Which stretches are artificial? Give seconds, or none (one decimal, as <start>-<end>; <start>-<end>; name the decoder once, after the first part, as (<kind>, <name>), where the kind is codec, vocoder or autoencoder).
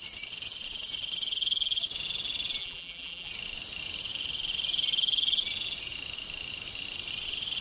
2.6-3.3 (vocoder, BigVGAN v2)